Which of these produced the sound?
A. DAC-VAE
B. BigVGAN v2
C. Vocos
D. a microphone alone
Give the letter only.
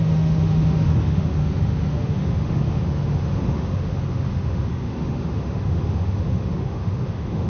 A